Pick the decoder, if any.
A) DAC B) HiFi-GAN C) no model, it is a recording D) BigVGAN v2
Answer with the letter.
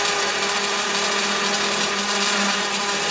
C